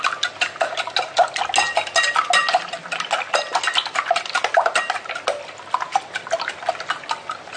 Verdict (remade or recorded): recorded